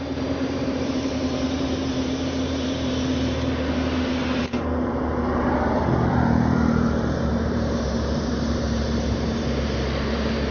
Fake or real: fake